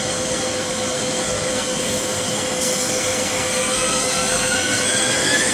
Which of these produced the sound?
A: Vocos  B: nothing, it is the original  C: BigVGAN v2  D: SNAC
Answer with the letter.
D